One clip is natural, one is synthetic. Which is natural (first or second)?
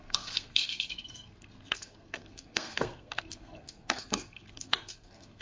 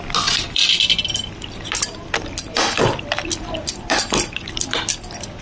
second